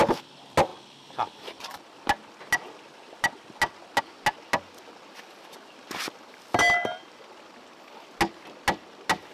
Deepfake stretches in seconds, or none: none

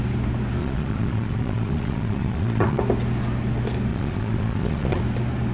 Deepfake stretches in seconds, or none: 0.6-2.8 (vocoder, Vocos); 3.9-5.0

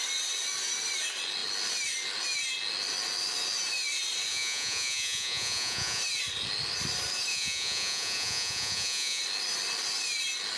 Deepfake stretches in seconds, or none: 4.3-6.0 (vocoder, Vocos); 7.3-9.2

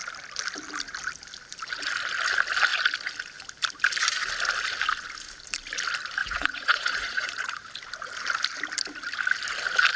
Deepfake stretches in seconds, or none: 6.2-7.7 (vocoder, Vocos)